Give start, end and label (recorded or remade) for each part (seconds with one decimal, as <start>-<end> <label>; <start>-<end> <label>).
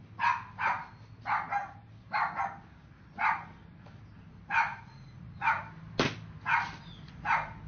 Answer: 0.0-4.7 recorded; 4.7-5.6 remade; 5.6-7.7 recorded